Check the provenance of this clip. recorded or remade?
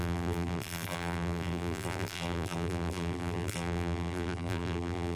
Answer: remade